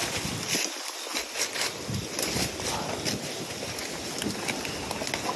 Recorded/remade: recorded